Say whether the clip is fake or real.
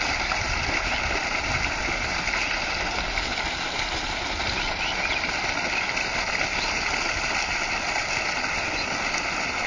real